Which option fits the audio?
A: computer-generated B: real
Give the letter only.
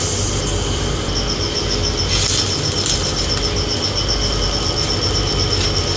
B